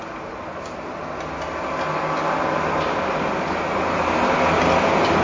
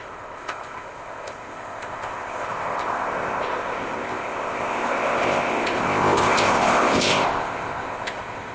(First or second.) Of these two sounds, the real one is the first